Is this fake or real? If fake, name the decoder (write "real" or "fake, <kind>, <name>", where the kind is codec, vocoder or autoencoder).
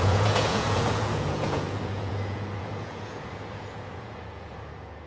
fake, vocoder, Vocos